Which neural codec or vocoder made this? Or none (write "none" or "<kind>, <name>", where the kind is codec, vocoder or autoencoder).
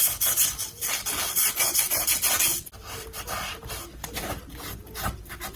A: none